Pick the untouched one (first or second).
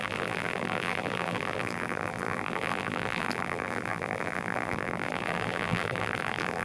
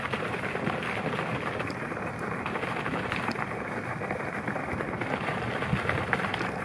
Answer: second